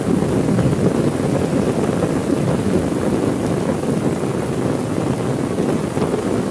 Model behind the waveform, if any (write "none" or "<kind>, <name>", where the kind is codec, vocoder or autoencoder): none